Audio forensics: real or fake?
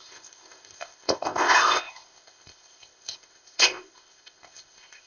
fake